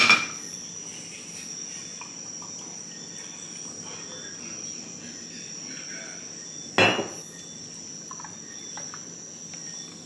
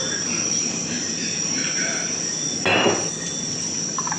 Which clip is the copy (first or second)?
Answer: second